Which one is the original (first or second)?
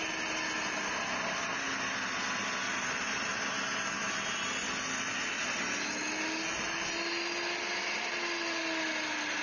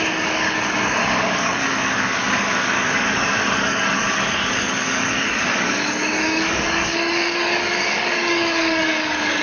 first